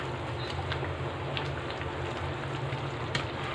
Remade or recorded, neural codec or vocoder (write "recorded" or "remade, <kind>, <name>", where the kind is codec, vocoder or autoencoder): recorded